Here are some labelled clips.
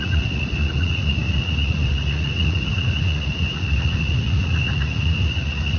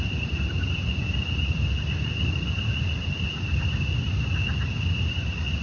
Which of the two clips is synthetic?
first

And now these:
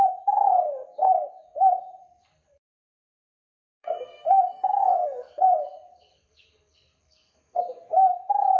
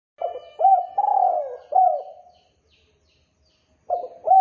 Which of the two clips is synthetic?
first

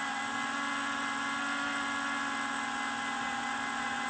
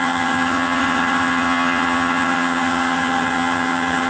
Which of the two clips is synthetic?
second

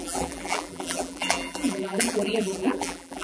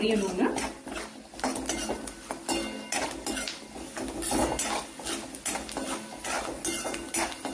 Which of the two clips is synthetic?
first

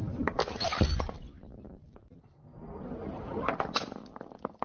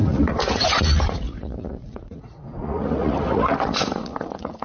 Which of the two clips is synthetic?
second